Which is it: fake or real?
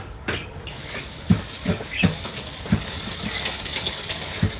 fake